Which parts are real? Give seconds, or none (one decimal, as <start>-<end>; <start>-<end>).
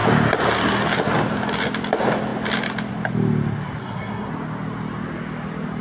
0.0-3.8; 4.3-5.8